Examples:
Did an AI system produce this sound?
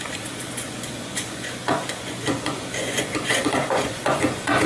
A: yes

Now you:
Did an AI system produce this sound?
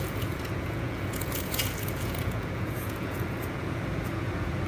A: yes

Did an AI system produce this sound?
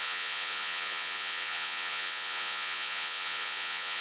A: yes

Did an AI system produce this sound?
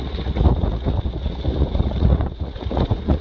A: yes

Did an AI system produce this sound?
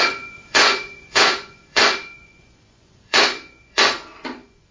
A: yes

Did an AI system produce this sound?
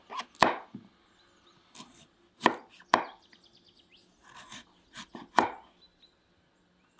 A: no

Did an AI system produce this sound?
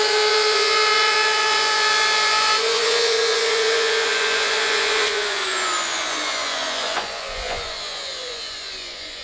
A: yes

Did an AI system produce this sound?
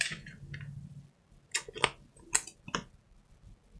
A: no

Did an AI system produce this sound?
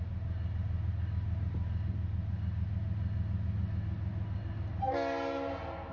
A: no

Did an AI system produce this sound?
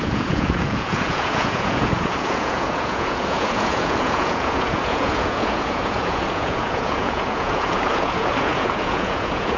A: yes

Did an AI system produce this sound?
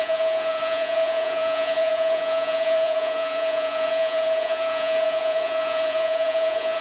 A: yes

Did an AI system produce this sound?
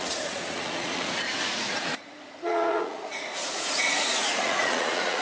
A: yes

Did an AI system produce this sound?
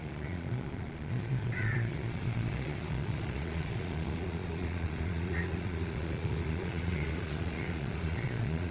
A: yes